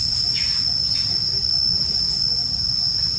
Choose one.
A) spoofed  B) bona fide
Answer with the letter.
B